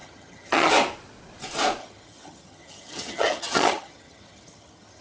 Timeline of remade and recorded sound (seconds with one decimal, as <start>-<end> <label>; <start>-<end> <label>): 0.0-0.7 remade; 0.7-1.8 recorded; 1.8-5.0 remade